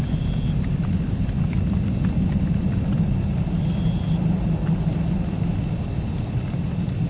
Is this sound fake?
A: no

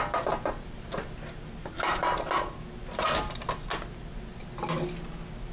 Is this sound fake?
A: no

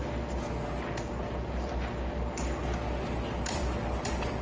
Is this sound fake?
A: no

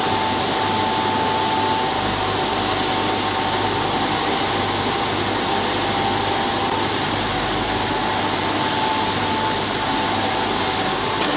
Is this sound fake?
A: no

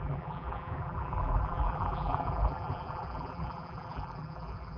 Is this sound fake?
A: yes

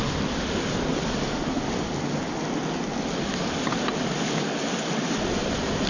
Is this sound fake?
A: no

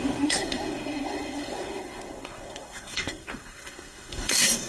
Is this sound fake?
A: yes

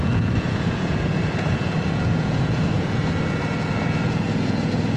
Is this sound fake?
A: yes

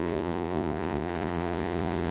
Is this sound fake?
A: yes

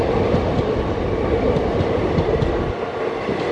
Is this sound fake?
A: no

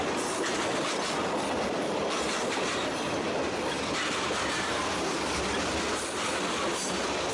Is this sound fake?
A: no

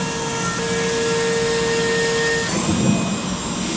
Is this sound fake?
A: no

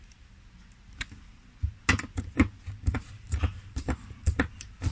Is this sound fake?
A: no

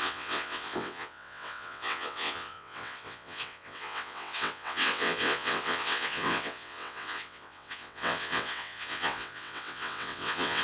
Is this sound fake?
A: yes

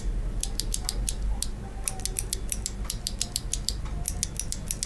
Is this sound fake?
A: no